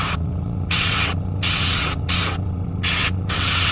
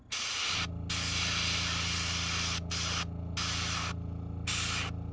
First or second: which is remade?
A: first